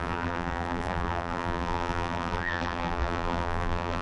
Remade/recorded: remade